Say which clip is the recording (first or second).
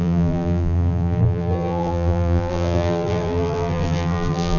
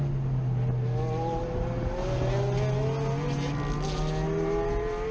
second